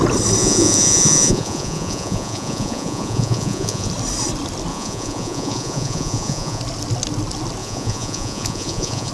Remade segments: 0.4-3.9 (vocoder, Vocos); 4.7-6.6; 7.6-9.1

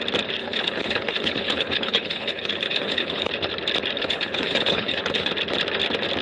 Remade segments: 0.4-3.3 (codec, HILCodec); 4.0-5.3

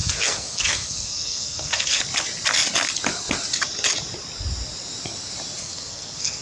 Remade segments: 0.0-2.0 (codec, SNAC); 5.6-6.4

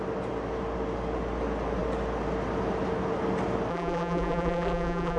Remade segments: 3.7-5.2 (vocoder, BigVGAN v2)

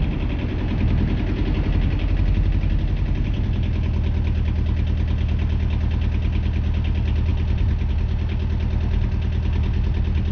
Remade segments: none

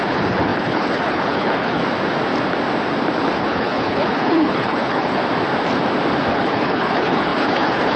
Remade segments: 0.0-1.8 (codec, HILCodec); 3.4-5.2; 6.3-8.0

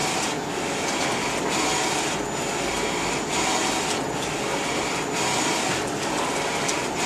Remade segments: none